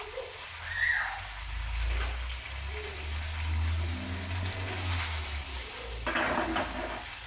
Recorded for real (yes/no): yes